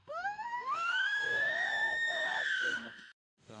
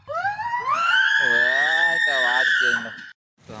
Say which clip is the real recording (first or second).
second